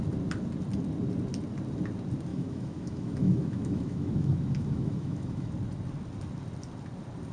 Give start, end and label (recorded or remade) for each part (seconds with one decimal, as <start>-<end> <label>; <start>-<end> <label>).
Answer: 0.0-2.3 recorded; 2.3-5.5 remade; 5.5-7.3 recorded